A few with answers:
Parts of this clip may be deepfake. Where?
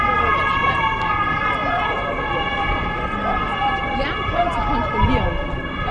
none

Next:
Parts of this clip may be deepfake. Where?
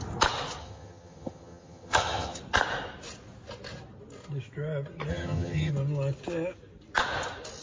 0.6-2.4 (vocoder, HiFi-GAN); 5.1-5.7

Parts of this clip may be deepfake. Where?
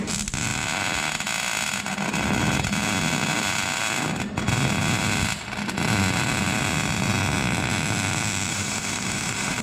8.5-9.6 (autoencoder, DAC-VAE)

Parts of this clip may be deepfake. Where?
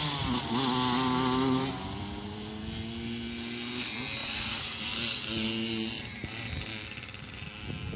4.2-4.8 (vocoder, Vocos)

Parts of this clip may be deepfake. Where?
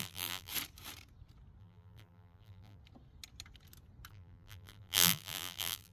0.0-0.5 (vocoder, BigVGAN v2); 1.6-2.8; 4.1-5.9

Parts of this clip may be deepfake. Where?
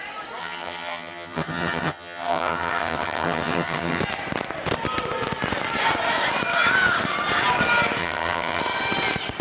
0.4-4.0 (vocoder, HiFi-GAN); 8.0-8.6